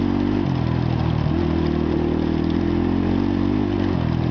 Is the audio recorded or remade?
recorded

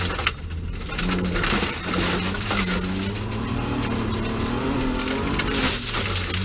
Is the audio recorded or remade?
recorded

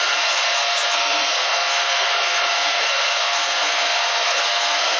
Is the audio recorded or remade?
remade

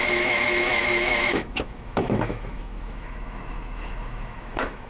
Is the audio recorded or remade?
remade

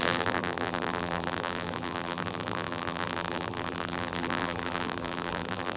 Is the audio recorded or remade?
remade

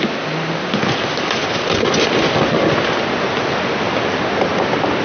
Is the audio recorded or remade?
recorded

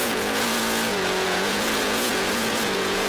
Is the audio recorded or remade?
remade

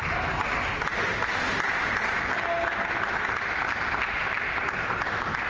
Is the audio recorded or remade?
recorded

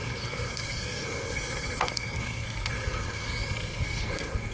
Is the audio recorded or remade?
remade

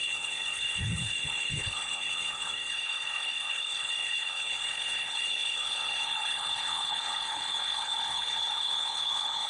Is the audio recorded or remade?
remade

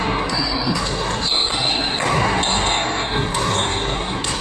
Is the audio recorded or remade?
remade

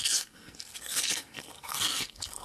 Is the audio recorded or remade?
remade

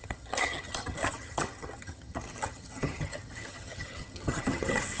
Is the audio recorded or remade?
remade